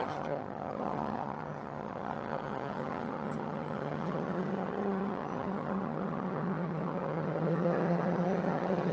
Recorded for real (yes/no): no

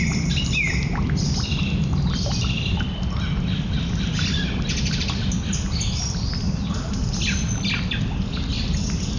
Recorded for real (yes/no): yes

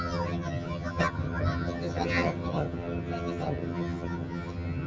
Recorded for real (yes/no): no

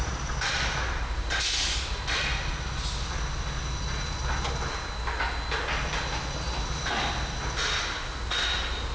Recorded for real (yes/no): yes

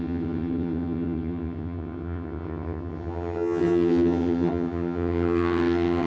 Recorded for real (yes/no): no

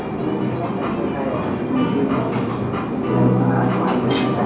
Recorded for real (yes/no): yes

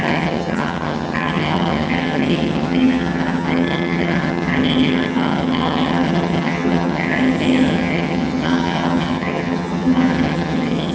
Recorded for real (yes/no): no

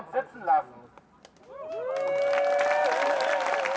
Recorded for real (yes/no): yes